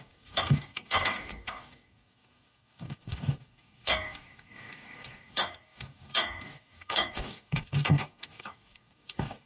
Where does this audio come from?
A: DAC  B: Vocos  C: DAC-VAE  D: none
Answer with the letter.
A